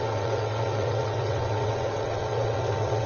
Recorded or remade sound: remade